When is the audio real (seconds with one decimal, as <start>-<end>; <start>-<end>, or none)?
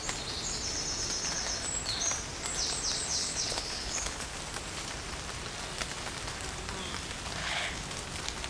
0.0-3.1; 4.3-7.4; 7.9-8.5